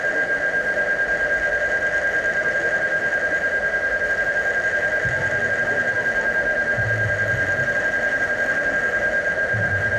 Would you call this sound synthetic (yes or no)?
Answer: no